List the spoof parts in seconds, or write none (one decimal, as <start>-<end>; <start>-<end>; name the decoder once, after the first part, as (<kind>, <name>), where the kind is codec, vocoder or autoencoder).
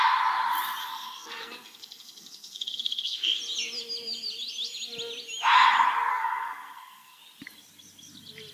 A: 0.8-3.4 (codec, SNAC); 6.1-7.2